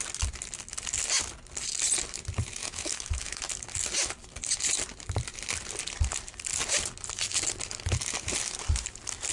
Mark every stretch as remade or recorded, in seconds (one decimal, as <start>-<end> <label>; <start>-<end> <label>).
0.0-2.6 recorded; 2.6-3.4 remade; 3.4-9.3 recorded